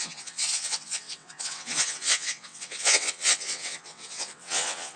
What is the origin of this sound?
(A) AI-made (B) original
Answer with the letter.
A